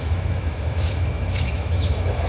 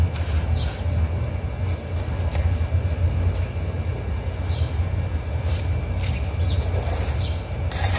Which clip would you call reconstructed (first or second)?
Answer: first